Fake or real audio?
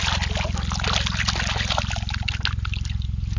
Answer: real